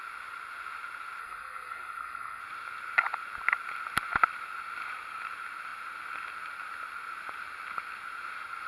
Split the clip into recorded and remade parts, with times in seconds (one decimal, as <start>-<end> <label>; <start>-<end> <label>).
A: 0.0-1.2 recorded; 1.2-2.4 remade; 2.4-8.7 recorded